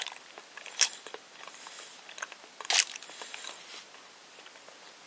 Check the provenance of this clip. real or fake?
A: real